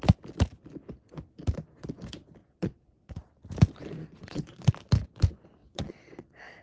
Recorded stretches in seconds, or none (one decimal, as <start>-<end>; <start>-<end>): 0.0-2.4; 3.3-4.0; 4.7-5.6